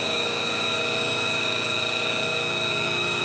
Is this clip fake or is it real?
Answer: fake